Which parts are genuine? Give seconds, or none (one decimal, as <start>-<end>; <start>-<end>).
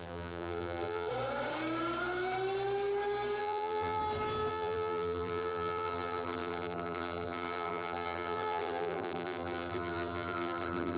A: 1.1-3.4; 4.0-4.5